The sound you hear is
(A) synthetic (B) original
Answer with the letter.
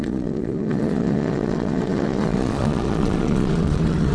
A